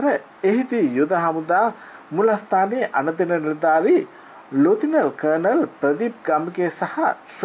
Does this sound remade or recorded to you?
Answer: recorded